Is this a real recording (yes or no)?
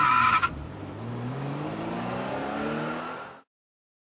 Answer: yes